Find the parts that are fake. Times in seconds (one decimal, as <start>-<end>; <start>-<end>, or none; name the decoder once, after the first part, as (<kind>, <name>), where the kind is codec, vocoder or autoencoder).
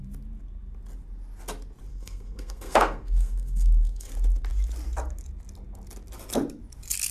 1.9-4.1 (codec, SNAC)